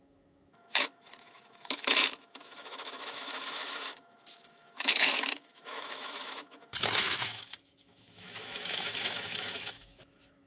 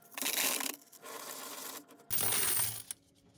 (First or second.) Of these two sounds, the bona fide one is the second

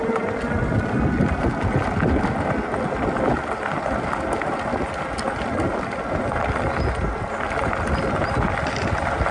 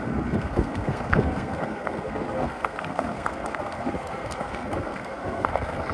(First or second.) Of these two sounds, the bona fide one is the first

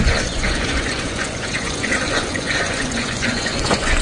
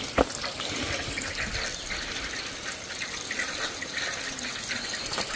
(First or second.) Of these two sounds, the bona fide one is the second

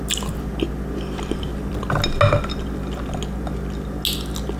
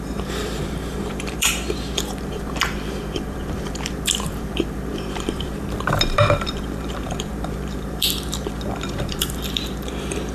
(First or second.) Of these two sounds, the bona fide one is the first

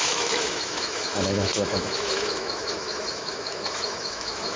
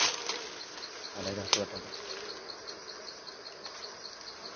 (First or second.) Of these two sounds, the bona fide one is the second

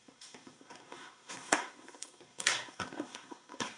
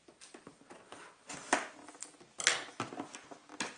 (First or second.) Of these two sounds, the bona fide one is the second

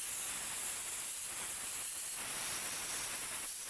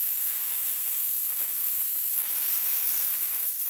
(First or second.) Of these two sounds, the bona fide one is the first